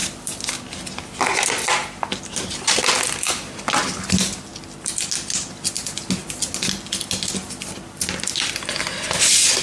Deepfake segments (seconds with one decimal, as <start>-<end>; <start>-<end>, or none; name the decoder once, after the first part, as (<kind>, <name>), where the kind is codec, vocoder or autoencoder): none